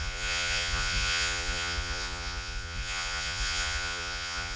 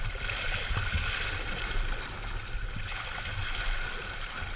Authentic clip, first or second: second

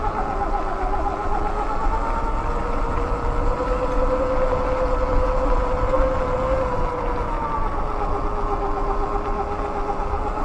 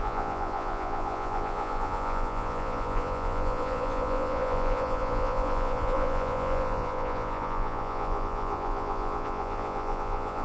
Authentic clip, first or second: first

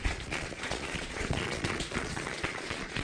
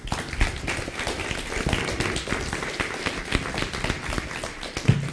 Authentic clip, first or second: second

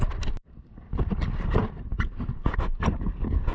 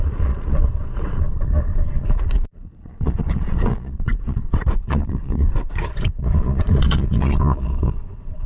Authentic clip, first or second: first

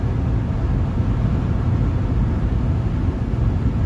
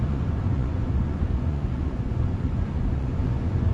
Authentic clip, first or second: first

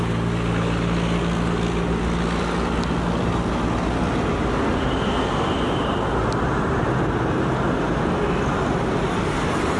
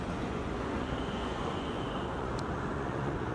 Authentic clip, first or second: first